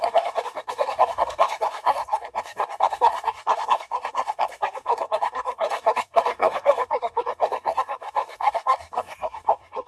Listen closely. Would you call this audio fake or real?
fake